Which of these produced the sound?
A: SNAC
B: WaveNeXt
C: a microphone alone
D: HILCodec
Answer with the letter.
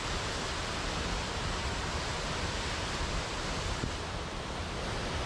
C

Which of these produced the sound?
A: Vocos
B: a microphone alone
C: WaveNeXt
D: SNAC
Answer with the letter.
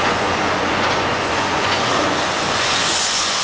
A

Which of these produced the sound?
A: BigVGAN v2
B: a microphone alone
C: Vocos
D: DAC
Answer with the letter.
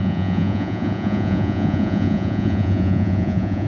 C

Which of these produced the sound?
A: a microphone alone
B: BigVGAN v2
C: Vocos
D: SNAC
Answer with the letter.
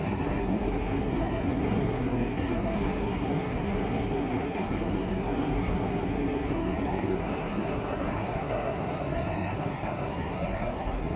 D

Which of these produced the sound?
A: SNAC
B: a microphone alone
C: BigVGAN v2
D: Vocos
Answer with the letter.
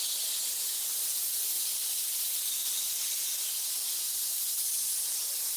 C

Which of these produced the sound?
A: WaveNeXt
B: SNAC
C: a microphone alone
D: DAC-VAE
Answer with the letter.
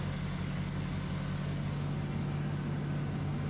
C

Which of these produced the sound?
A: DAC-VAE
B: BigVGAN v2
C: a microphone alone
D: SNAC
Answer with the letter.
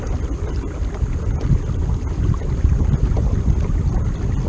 C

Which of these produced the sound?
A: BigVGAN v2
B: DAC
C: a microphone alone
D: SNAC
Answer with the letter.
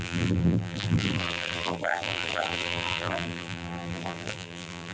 A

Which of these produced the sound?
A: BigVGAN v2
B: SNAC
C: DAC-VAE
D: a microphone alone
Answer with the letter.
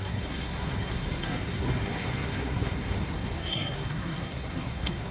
B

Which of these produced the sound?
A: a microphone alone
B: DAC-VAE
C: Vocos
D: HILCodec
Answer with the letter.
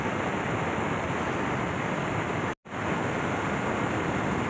A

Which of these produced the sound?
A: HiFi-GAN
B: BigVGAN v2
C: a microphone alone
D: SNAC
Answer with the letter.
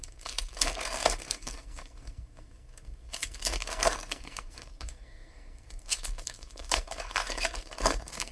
D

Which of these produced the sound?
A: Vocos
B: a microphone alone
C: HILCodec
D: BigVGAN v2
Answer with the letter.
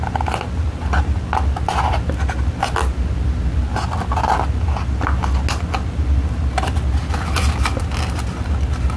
B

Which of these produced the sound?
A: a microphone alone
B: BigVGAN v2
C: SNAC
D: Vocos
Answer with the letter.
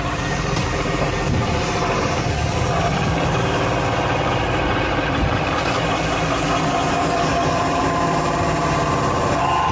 B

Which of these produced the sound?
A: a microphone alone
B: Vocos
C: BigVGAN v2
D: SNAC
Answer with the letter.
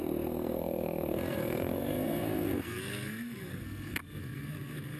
D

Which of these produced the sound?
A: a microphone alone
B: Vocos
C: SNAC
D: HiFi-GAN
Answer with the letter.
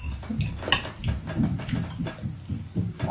A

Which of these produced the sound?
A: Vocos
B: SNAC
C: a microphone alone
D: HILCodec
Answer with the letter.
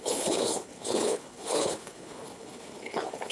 D